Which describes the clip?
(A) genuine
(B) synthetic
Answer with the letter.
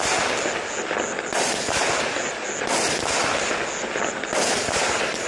A